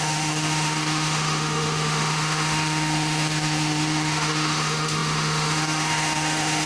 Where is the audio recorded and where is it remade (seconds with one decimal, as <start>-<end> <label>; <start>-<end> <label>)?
0.0-6.7 remade